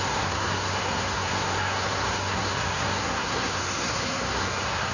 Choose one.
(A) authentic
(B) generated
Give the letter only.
B